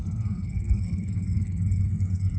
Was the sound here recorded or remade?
remade